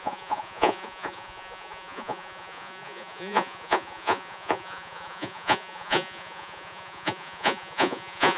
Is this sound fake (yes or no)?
yes